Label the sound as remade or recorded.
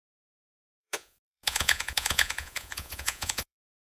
remade